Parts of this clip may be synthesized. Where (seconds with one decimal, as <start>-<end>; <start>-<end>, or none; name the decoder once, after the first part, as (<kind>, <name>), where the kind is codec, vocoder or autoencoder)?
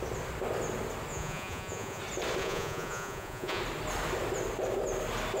1.1-2.0 (vocoder, Vocos); 2.4-3.6